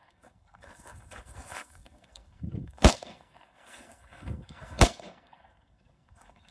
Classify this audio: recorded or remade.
remade